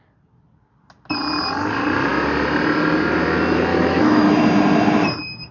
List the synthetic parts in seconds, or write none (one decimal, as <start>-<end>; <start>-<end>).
3.7-4.3